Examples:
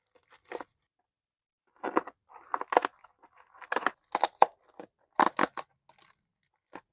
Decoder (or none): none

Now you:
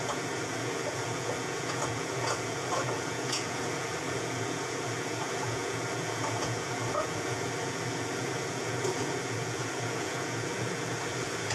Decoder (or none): vocoder, Vocos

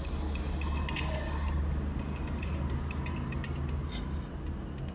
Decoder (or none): none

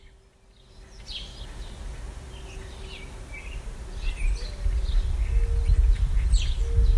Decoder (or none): none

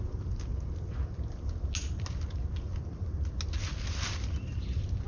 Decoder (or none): none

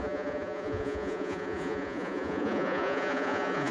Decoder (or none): vocoder, Vocos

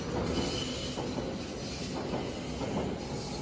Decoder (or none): none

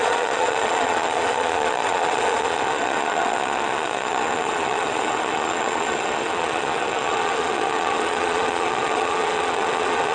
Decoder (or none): vocoder, Vocos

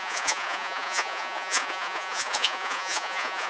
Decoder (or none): vocoder, Vocos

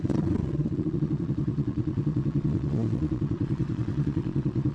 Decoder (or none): vocoder, Vocos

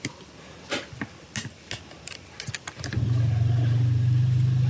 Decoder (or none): none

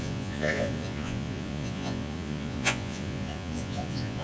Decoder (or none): vocoder, Vocos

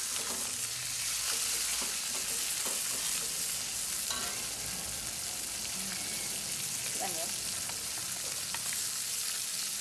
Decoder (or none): none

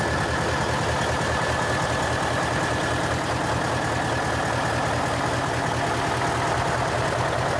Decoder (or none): none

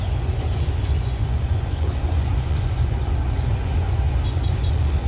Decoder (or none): vocoder, Vocos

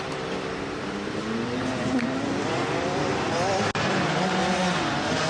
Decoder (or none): none